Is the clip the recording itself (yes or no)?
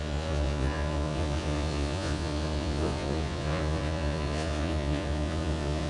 no